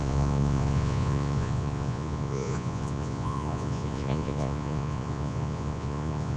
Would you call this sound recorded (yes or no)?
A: no